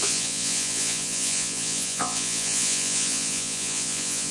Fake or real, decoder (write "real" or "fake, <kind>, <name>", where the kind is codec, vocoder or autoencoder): fake, vocoder, Vocos